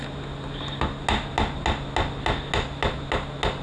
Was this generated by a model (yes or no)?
no